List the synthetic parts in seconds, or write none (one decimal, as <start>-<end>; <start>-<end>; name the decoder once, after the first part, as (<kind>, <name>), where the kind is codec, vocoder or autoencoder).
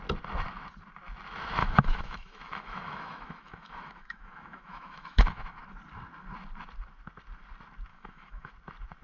1.6-5.6 (autoencoder, DAC-VAE); 7.9-8.5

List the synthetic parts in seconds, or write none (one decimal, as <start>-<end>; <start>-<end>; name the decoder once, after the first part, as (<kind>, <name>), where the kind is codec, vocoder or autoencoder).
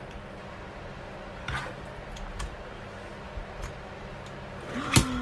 none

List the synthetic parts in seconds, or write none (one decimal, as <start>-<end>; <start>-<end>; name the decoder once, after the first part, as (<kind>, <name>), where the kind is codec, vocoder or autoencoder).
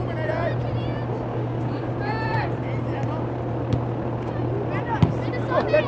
1.3-1.9 (codec, DAC)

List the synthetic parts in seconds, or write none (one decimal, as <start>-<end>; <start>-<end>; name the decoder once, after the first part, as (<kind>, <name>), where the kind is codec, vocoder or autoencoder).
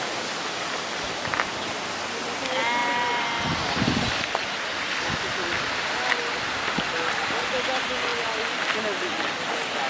none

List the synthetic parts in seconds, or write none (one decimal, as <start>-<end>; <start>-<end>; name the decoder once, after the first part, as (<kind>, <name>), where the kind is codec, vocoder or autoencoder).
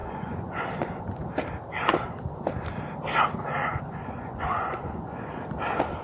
0.0-1.3 (vocoder, Vocos); 3.6-5.3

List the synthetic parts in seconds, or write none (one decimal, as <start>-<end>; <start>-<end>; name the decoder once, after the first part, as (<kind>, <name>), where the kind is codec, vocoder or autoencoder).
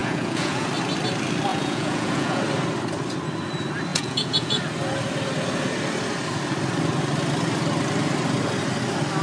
0.0-0.7 (vocoder, Vocos); 1.5-2.4; 3.9-4.6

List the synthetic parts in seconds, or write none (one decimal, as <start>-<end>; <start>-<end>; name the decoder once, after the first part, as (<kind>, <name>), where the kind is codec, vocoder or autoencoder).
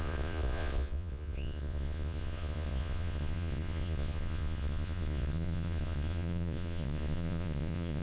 0.0-8.0 (vocoder, Vocos)